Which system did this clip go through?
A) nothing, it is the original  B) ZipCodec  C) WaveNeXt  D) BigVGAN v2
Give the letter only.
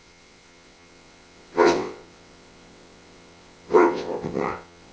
C